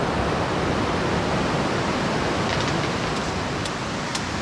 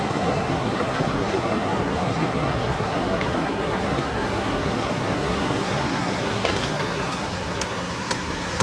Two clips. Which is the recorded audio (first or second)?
first